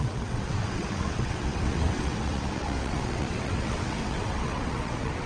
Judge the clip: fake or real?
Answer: fake